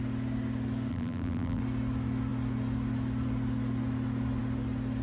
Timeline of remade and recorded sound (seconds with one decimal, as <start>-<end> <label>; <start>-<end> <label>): 0.0-0.9 recorded; 0.9-1.6 remade; 1.6-5.0 recorded